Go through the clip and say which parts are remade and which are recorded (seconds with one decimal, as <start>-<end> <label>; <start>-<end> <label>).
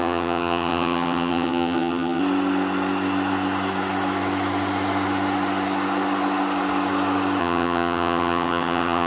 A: 0.0-2.2 remade; 2.2-7.4 recorded; 7.4-9.1 remade